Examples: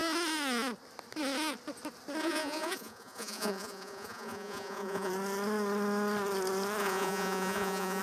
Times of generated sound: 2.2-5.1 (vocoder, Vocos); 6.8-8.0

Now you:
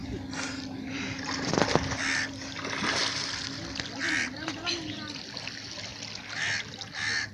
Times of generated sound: none

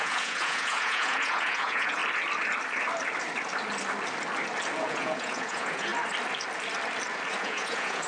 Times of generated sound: 0.0-2.0 (vocoder, Vocos); 4.8-5.9; 7.4-8.1

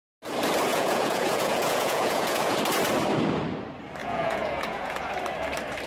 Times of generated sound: 0.7-2.6 (vocoder, Vocos); 4.0-5.1

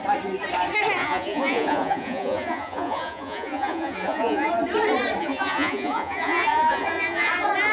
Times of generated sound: 1.0-4.5 (vocoder, Vocos); 5.2-7.3

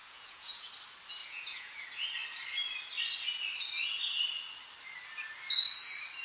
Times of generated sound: 0.0-0.7 (vocoder, Vocos); 1.2-1.8